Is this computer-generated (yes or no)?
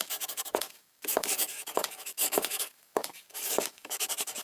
yes